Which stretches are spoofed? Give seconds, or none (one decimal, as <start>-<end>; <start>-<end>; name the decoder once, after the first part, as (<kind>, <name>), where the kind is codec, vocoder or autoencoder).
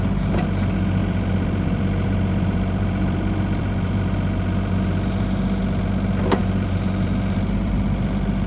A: 1.0-4.0 (vocoder, BigVGAN v2); 6.4-8.5